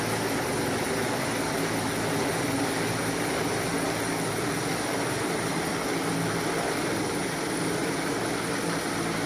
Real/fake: real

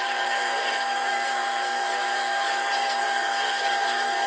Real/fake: fake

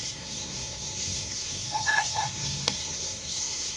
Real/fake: fake